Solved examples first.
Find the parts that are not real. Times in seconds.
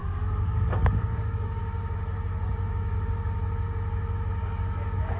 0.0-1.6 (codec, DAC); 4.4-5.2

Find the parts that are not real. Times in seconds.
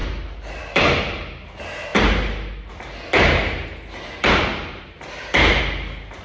none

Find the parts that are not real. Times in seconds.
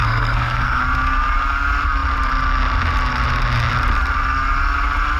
0.0-0.8 (codec, SNAC)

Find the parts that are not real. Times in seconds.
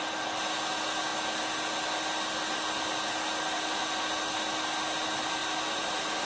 none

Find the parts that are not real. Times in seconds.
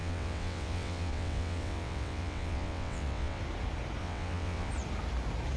0.0-3.4 (vocoder, WaveNeXt); 4.0-4.7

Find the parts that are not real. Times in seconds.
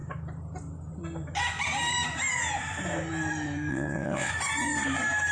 3.7-4.3 (vocoder, WaveNeXt)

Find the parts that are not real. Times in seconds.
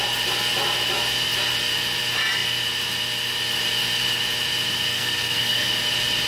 4.9-5.7 (codec, SNAC)